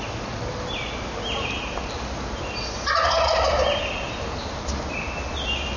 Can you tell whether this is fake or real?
real